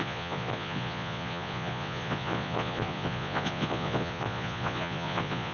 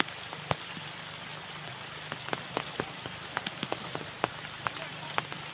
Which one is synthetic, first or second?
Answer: first